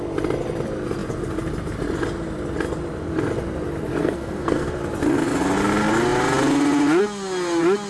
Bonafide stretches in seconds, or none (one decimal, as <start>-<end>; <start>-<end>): 0.0-4.0; 4.7-7.9